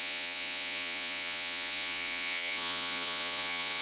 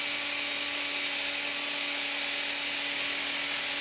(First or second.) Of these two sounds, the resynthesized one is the first